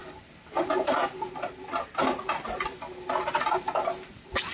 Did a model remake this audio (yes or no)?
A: no